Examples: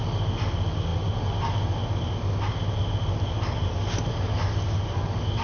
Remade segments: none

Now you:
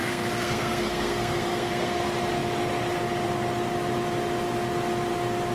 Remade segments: 0.0-2.0 (codec, SNAC)

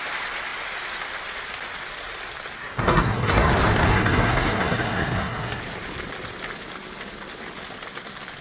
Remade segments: 2.6-3.5 (codec, SNAC); 3.9-5.6

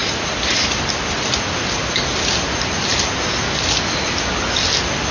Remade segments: none

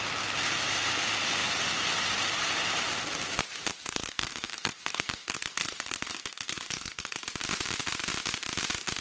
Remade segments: 3.7-7.2 (codec, SNAC)

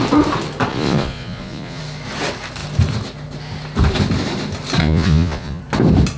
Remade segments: 0.7-1.8 (vocoder, Vocos); 4.8-5.6

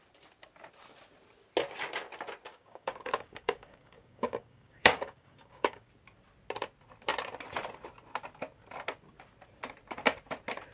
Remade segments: 2.5-5.9 (codec, DAC)

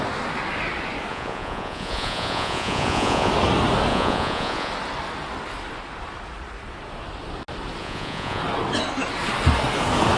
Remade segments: 1.1-3.3 (vocoder, Vocos); 3.9-4.7; 7.8-8.4